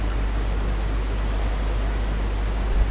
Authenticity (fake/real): real